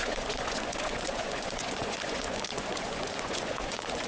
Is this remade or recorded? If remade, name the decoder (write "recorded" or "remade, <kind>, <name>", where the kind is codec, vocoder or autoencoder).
remade, vocoder, Vocos